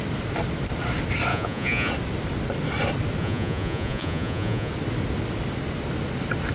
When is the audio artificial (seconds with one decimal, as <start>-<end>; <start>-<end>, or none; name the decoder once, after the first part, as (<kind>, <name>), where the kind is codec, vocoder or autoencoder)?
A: 1.3-1.9 (vocoder, Vocos); 3.2-4.7